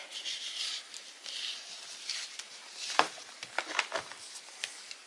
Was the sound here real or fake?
fake